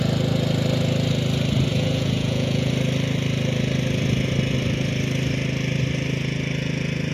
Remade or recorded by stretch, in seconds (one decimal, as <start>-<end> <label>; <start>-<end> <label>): 0.0-1.7 recorded; 1.7-2.7 remade; 2.7-7.1 recorded